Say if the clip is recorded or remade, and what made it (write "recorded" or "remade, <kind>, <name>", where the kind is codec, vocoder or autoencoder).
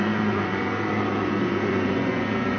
remade, vocoder, Vocos